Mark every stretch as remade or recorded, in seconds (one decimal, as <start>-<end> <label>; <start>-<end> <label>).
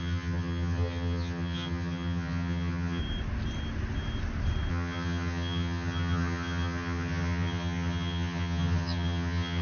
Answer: 0.0-3.0 remade; 3.0-4.7 recorded; 4.7-9.6 remade